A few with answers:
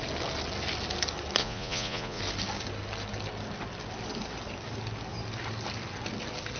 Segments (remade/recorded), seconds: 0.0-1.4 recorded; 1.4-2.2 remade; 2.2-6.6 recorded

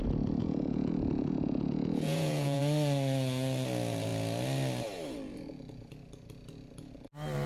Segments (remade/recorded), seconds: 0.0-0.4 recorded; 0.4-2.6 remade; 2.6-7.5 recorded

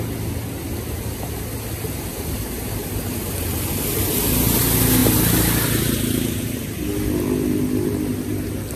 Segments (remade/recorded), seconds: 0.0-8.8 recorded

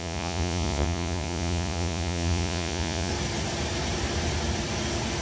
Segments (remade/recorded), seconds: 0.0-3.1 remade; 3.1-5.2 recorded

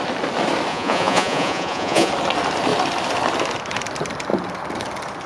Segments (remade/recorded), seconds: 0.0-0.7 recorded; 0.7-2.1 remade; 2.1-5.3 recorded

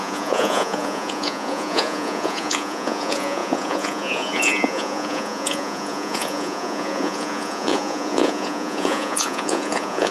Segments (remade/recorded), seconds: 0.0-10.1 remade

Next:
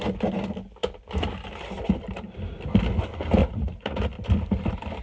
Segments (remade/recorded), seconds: 0.0-3.4 recorded; 3.4-4.1 remade; 4.1-5.0 recorded